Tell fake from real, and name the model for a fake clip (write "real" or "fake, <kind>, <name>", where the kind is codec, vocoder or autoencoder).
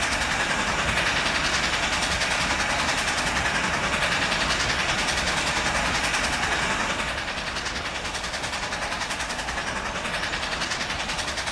real